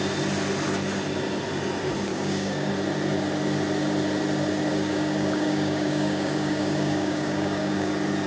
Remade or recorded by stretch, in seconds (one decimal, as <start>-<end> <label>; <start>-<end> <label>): 0.0-2.1 recorded; 2.1-2.7 remade; 2.7-4.7 recorded; 4.7-7.9 remade; 7.9-8.3 recorded